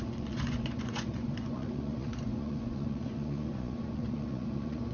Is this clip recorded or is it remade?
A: remade